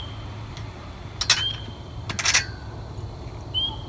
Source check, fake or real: real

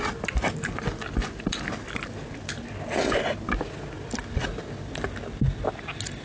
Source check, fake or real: real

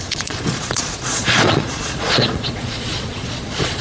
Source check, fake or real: fake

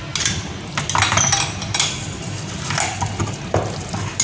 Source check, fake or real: real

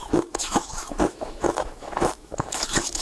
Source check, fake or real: fake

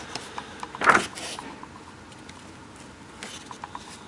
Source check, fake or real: real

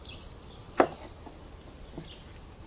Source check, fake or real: real